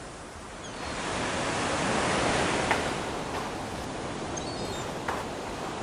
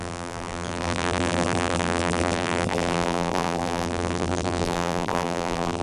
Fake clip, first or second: second